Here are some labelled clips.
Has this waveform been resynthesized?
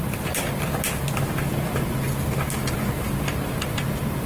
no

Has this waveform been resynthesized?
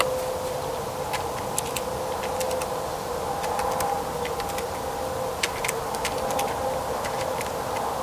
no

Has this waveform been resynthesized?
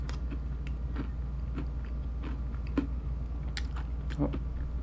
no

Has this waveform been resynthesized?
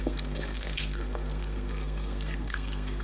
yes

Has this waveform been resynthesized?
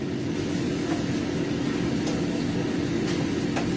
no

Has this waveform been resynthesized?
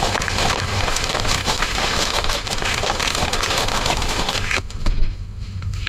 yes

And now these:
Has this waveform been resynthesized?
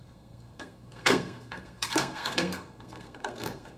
yes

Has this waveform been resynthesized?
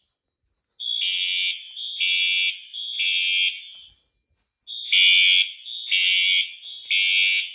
no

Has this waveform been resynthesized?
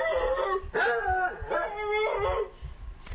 no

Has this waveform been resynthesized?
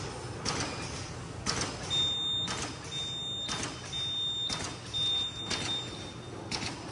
no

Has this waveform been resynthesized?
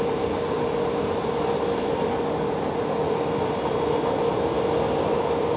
no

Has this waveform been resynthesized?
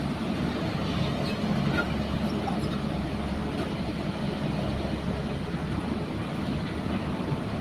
no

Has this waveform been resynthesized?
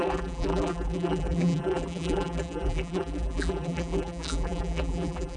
yes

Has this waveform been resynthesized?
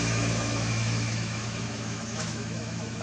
yes